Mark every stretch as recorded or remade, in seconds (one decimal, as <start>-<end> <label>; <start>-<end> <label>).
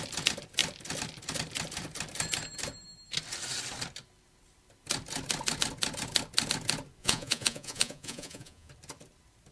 0.0-7.0 recorded; 7.0-8.7 remade; 8.7-9.5 recorded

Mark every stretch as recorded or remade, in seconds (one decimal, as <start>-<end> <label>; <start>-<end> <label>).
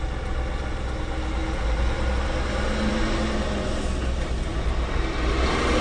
0.0-5.8 recorded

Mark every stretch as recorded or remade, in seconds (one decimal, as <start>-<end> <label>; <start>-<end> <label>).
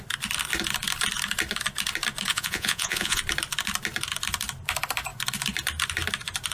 0.0-2.3 recorded; 2.3-3.2 remade; 3.2-6.5 recorded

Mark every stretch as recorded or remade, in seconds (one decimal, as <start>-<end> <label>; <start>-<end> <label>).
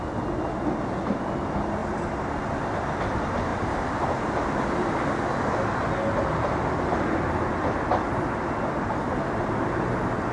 0.0-10.3 recorded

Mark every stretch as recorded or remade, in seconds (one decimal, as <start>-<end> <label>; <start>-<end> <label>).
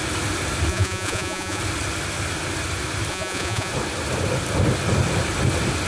0.0-0.7 recorded; 0.7-1.6 remade; 1.6-3.1 recorded; 3.1-3.7 remade; 3.7-5.9 recorded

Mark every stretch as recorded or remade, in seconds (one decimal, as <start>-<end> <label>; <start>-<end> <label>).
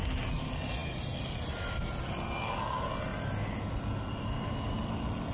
0.0-5.3 recorded